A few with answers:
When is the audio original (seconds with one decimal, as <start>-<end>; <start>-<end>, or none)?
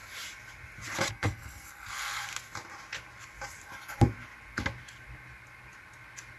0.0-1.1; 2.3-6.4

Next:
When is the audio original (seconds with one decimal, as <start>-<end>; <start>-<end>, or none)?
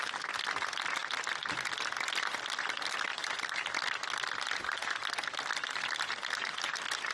0.0-3.1; 3.7-7.1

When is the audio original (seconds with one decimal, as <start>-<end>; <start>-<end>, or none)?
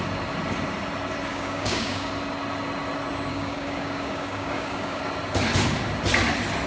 0.0-1.3; 2.1-3.3; 5.0-6.7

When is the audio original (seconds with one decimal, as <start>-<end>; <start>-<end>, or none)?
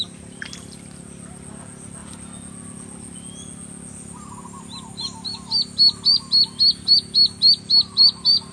0.0-8.5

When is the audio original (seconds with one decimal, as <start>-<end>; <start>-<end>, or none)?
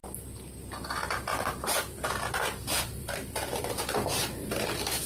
0.0-1.3; 3.7-5.1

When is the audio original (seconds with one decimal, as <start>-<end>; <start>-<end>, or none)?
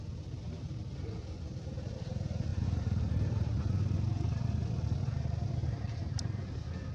0.0-2.5; 3.5-5.6; 6.4-6.9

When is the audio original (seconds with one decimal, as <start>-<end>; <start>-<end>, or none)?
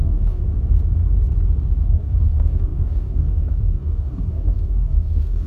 0.4-1.8